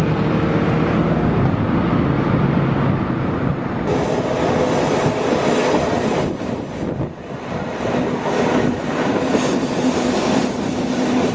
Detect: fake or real real